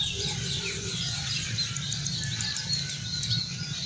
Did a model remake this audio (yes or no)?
no